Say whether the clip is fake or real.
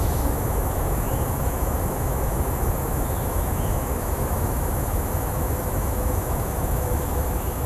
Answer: fake